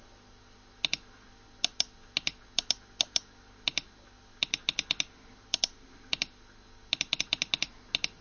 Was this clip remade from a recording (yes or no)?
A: no